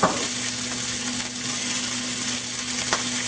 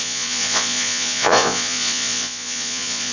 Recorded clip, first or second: first